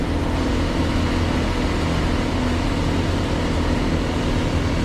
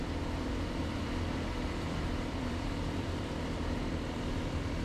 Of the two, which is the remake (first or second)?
second